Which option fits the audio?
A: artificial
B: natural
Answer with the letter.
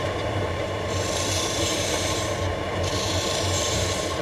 A